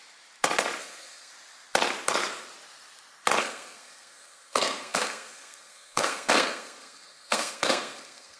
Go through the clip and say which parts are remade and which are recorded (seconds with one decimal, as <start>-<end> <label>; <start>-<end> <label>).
0.0-0.8 recorded; 0.8-1.3 remade; 1.3-3.4 recorded; 3.4-8.4 remade

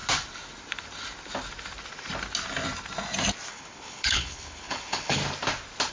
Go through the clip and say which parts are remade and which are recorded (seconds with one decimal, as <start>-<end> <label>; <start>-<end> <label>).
0.0-3.5 recorded; 3.5-5.2 remade; 5.2-5.9 recorded

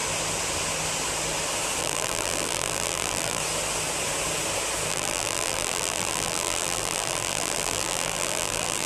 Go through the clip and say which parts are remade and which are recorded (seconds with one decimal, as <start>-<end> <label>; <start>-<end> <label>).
0.0-1.8 recorded; 1.8-3.4 remade; 3.4-4.9 recorded; 4.9-8.9 remade

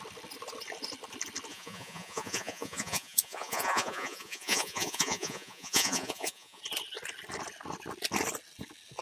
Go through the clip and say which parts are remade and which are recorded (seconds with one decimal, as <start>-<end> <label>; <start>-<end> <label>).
0.0-1.5 recorded; 1.5-6.6 remade; 6.6-9.0 recorded

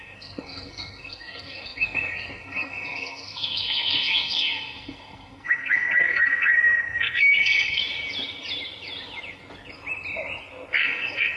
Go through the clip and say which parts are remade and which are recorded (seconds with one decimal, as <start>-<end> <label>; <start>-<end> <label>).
0.0-7.8 remade; 7.8-10.8 recorded; 10.8-11.4 remade

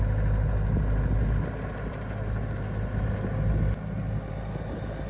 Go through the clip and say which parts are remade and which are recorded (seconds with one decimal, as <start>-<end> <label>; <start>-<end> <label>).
0.0-5.1 recorded

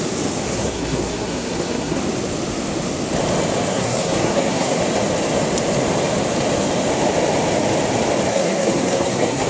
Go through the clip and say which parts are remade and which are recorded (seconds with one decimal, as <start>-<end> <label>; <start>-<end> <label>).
0.0-0.4 recorded; 0.4-2.0 remade; 2.0-3.7 recorded; 3.7-4.8 remade; 4.8-8.3 recorded; 8.3-9.5 remade

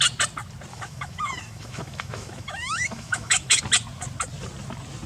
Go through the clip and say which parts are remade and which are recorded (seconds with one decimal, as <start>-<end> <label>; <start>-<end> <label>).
0.0-0.7 recorded; 0.7-3.6 remade; 3.6-5.1 recorded